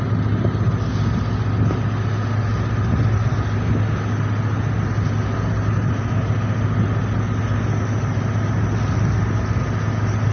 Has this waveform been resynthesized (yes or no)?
no